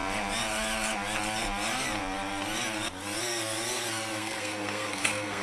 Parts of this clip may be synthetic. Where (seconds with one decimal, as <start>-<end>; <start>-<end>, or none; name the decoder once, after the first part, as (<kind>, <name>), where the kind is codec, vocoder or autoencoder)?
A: 4.2-5.4 (codec, SNAC)

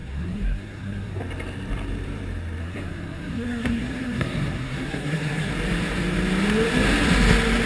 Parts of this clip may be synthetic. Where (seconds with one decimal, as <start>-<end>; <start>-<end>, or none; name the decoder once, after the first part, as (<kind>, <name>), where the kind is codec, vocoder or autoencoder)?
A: 0.0-1.2 (codec, SNAC); 2.6-5.5

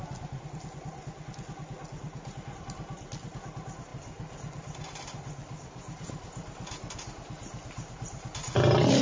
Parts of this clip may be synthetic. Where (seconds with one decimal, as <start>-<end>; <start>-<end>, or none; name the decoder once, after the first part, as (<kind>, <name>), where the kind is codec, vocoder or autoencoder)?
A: none